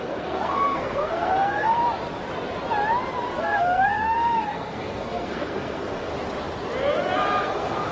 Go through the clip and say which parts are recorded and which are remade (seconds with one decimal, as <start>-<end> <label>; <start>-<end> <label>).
0.0-1.8 remade; 1.8-3.4 recorded; 3.4-6.1 remade; 6.1-7.4 recorded; 7.4-7.9 remade